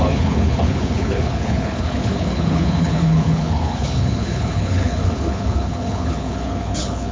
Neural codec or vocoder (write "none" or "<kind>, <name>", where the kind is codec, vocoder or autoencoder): codec, HILCodec